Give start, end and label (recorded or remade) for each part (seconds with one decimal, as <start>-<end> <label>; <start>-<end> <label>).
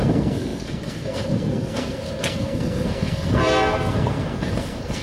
0.0-5.0 remade